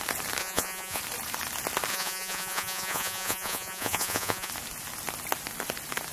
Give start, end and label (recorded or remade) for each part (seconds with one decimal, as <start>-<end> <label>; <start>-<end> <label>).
0.0-0.4 recorded; 0.4-1.0 remade; 1.0-1.9 recorded; 1.9-4.5 remade; 4.5-6.1 recorded